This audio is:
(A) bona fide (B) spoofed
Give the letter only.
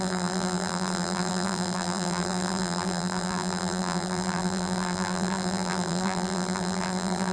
B